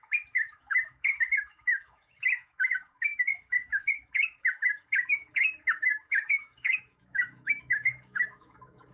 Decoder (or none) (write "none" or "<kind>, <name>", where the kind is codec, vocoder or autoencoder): autoencoder, DAC-VAE